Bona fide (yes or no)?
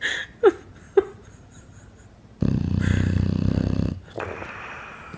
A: yes